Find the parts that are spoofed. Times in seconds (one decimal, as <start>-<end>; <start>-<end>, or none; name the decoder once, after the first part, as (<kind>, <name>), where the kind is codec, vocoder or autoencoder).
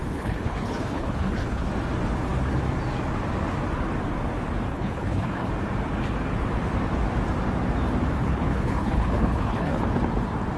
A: 0.0-1.7 (codec, HILCodec); 4.7-5.5; 8.2-9.8